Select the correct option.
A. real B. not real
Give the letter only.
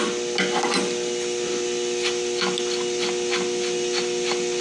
A